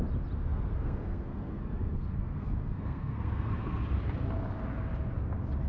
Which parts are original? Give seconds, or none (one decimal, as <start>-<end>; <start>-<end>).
0.0-0.4; 3.8-5.7

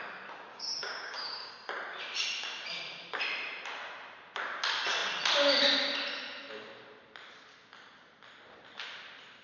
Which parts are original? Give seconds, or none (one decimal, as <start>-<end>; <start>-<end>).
0.0-0.5; 1.5-9.4

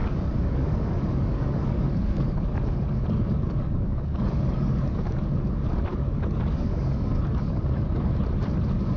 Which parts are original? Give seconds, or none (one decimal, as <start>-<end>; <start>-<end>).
5.2-5.9; 8.2-9.0